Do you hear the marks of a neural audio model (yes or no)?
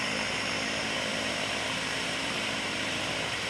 yes